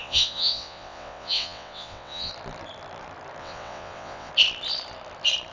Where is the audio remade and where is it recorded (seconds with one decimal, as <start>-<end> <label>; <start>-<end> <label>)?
0.0-2.3 remade; 2.3-3.4 recorded; 3.4-4.3 remade; 4.3-5.5 recorded